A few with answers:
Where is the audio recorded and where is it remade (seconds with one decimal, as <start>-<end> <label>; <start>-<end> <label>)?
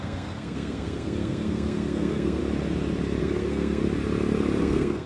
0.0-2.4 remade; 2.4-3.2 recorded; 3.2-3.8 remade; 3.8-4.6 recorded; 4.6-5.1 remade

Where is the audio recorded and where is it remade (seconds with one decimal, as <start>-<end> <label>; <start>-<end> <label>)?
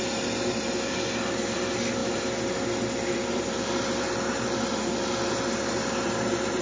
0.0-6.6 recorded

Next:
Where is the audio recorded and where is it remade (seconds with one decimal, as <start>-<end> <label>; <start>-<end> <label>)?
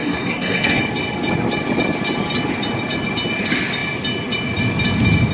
0.0-0.8 remade; 0.8-5.3 recorded